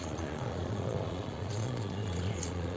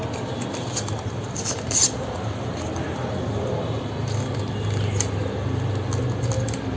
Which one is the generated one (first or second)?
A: first